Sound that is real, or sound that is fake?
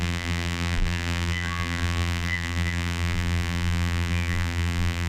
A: fake